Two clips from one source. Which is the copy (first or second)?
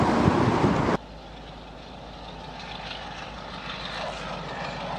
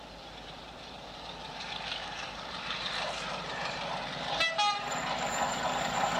second